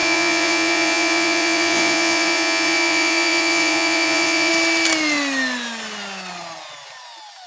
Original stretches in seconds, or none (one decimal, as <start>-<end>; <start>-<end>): 4.5-7.5